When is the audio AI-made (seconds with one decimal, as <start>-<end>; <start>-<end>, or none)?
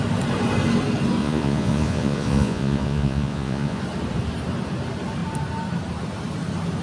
1.2-3.8